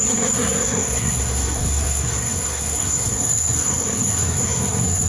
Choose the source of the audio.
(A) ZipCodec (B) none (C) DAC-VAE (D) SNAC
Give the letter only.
D